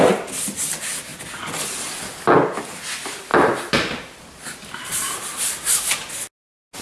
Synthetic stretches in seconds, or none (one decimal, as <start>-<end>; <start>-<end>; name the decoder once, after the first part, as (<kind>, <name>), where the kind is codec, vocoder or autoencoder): 3.3-6.1 (vocoder, BigVGAN v2)